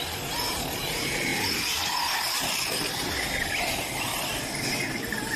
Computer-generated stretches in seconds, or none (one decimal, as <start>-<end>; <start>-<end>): none